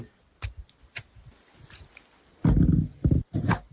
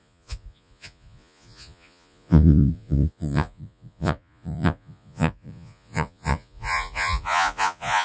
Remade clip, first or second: second